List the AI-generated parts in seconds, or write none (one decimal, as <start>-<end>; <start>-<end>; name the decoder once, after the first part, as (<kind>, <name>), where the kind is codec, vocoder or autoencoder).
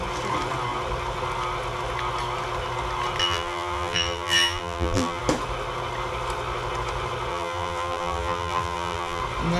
3.2-5.2 (vocoder, BigVGAN v2); 7.3-9.2